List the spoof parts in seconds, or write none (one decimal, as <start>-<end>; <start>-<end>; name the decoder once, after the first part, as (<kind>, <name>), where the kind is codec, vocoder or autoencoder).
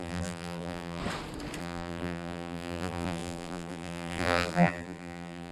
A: 0.0-1.0 (vocoder, BigVGAN v2); 1.6-5.5